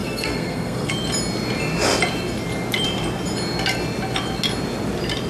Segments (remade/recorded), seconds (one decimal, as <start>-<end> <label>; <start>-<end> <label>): 0.0-0.9 remade; 0.9-5.3 recorded

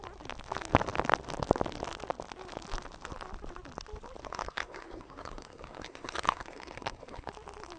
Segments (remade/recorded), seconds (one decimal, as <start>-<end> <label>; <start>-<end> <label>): 0.0-4.2 recorded; 4.2-7.3 remade; 7.3-7.8 recorded